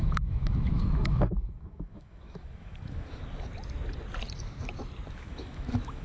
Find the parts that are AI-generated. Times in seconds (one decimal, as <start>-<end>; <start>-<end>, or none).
0.0-3.2; 5.1-6.0